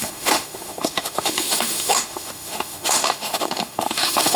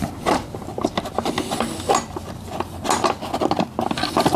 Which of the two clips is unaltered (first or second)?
second